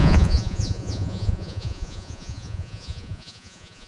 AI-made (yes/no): yes